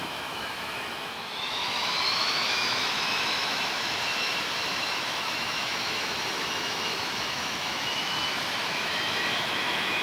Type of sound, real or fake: fake